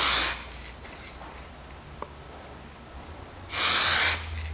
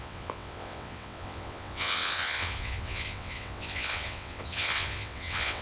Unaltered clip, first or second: first